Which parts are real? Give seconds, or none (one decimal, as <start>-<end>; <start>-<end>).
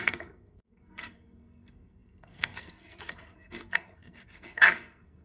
none